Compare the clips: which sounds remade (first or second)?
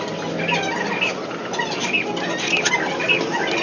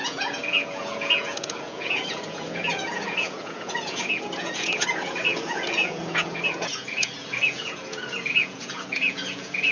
second